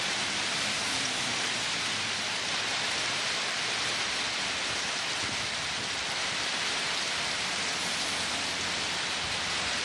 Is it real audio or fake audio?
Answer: fake